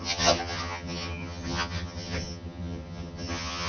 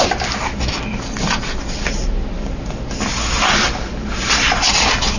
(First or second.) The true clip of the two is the second